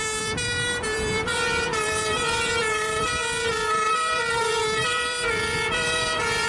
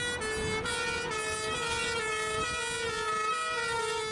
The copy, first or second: first